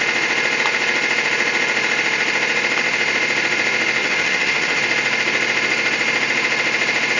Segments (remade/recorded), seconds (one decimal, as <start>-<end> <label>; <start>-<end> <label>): 0.0-4.0 recorded; 4.0-4.8 remade; 4.8-7.2 recorded

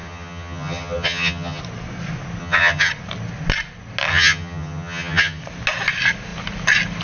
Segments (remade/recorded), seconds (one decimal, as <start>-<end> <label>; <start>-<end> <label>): 0.0-1.6 remade; 1.6-2.4 recorded; 2.4-2.9 remade; 2.9-4.1 recorded; 4.1-5.4 remade; 5.4-7.0 recorded